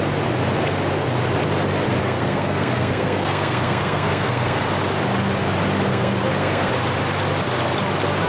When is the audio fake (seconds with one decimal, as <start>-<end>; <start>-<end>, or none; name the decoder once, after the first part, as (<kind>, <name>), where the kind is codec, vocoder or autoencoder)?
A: 2.0-4.6 (codec, SNAC); 5.9-6.7